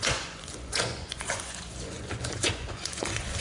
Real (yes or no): no